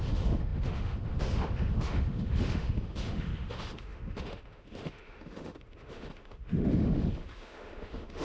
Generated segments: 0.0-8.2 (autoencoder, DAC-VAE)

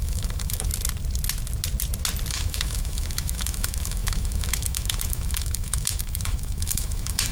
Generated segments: 0.0-0.7 (autoencoder, DAC-VAE); 2.3-7.3

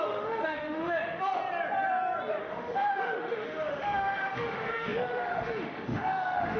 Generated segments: 0.0-1.4 (autoencoder, DAC-VAE); 2.4-6.6

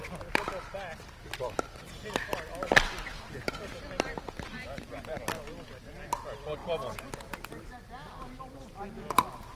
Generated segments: none

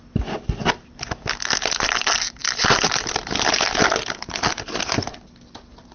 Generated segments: none